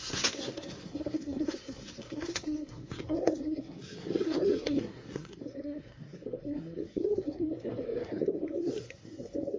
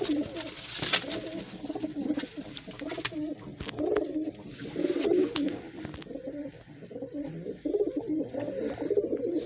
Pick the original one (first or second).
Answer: second